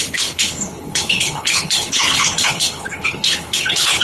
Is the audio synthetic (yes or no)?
yes